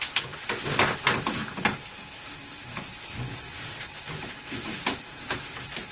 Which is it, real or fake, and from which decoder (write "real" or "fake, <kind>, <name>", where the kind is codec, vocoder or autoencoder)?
fake, vocoder, BigVGAN v2